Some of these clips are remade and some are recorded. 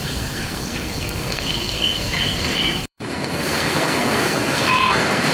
remade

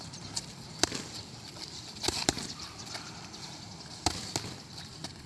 remade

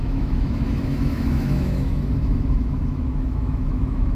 remade